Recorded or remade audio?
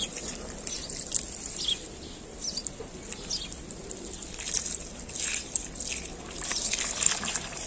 recorded